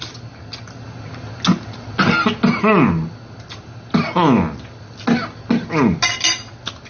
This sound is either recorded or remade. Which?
recorded